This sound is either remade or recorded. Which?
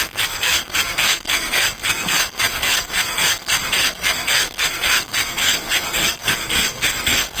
remade